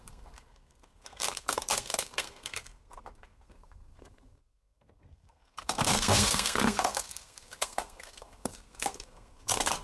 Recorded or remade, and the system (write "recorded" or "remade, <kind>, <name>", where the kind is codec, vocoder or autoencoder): remade, codec, SNAC